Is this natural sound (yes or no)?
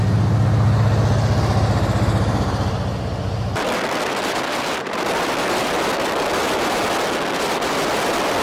yes